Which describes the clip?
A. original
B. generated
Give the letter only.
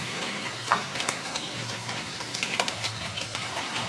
B